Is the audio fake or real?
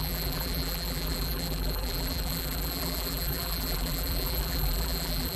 fake